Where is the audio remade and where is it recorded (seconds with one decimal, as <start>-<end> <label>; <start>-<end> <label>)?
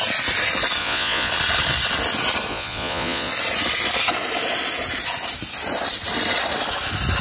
0.0-0.8 recorded; 0.8-1.3 remade; 1.3-2.5 recorded; 2.5-3.3 remade; 3.3-7.2 recorded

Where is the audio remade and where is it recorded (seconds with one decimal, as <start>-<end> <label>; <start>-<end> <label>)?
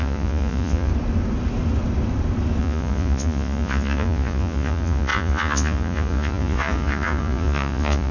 0.0-0.9 remade; 0.9-2.6 recorded; 2.6-8.1 remade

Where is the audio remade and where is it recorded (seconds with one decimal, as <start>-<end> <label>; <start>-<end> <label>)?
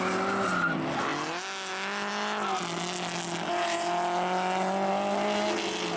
0.0-6.0 recorded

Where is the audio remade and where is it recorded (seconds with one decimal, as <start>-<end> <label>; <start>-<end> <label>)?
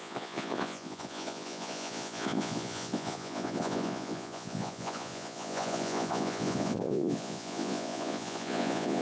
0.0-9.0 remade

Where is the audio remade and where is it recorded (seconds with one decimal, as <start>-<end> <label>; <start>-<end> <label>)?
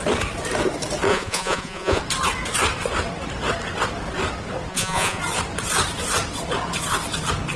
0.0-1.1 recorded; 1.1-2.0 remade; 2.0-4.7 recorded; 4.7-5.2 remade; 5.2-7.6 recorded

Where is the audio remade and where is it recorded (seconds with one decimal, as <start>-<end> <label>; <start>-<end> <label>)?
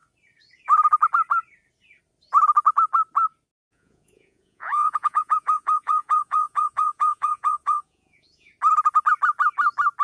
0.0-3.6 recorded; 3.6-8.5 remade; 8.5-10.0 recorded